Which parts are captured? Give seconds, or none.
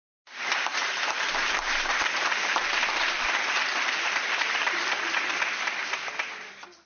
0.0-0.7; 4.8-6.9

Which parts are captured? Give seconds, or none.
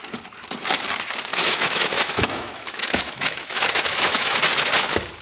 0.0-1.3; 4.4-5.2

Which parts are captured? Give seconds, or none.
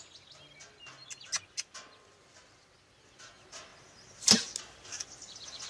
0.0-5.7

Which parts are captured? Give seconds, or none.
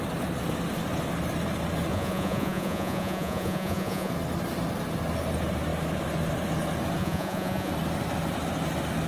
0.0-1.9; 4.1-7.0; 7.7-9.1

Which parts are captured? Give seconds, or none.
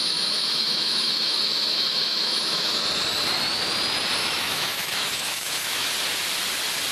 2.8-4.2; 5.9-6.9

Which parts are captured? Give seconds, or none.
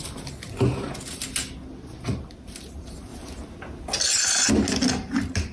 0.0-5.5